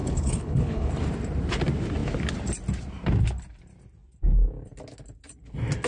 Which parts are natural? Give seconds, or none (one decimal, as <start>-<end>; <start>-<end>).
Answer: 0.9-5.9